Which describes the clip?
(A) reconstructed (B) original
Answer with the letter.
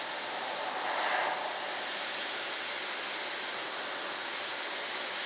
B